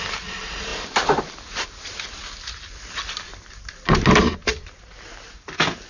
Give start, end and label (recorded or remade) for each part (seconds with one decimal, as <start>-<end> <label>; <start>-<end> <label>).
0.0-0.7 recorded; 0.7-1.2 remade; 1.2-4.5 recorded; 4.5-5.3 remade; 5.3-5.9 recorded